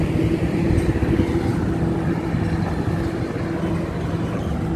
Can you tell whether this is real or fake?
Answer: real